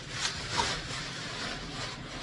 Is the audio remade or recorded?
recorded